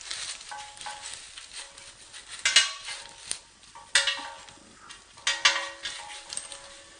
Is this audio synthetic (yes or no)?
no